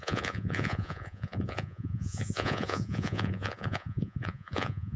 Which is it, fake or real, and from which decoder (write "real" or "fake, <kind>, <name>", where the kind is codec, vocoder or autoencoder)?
fake, vocoder, Vocos